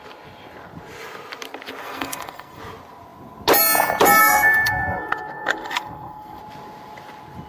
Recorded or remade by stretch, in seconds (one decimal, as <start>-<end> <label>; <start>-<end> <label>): 0.0-1.8 recorded; 1.8-2.6 remade; 2.6-4.2 recorded; 4.2-6.4 remade; 6.4-7.5 recorded